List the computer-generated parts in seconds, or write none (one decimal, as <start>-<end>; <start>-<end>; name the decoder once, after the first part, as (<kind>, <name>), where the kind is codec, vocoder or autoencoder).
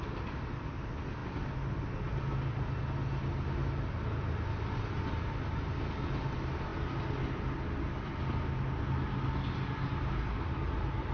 none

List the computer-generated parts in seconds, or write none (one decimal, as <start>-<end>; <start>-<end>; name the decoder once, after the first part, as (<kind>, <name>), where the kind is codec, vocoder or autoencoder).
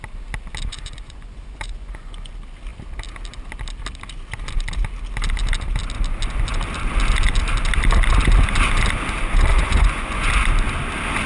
0.7-2.3 (vocoder, Vocos); 9.5-10.3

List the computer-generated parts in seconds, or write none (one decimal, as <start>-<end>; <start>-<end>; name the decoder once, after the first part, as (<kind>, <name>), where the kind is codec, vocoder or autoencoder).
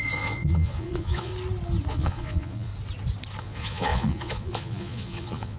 0.0-1.3 (vocoder, Vocos); 1.9-2.7; 3.4-5.6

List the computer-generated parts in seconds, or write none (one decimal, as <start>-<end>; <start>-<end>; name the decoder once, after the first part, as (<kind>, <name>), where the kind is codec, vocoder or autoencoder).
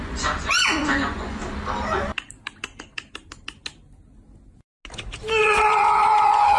0.0-1.4 (vocoder, Vocos); 5.4-6.6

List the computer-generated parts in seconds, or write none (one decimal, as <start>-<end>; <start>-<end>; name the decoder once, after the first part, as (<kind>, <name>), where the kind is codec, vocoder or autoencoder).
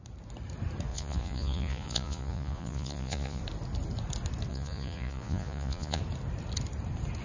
0.9-3.4 (vocoder, Vocos); 4.5-6.0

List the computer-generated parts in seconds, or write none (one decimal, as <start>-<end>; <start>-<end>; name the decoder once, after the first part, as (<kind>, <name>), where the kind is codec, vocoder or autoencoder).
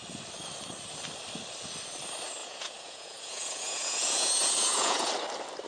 2.4-5.1 (vocoder, Vocos)